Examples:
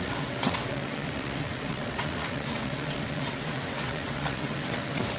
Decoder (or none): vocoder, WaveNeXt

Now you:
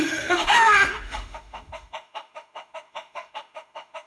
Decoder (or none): autoencoder, DAC-VAE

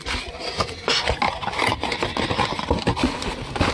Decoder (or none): none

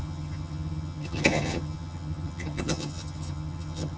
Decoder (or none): vocoder, HiFi-GAN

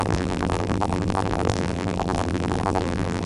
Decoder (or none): vocoder, BigVGAN v2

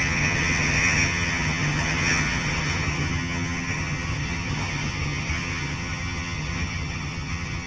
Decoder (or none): vocoder, HiFi-GAN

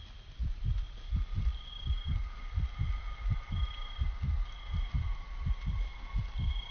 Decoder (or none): none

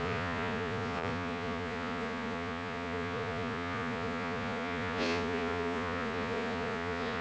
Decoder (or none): vocoder, Vocos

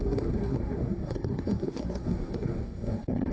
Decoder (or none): codec, SNAC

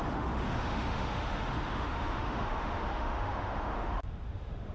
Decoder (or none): autoencoder, DAC-VAE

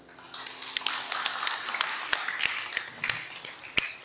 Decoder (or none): none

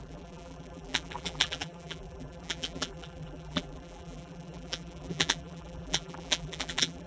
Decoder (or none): vocoder, BigVGAN v2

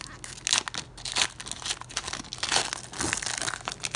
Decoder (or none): none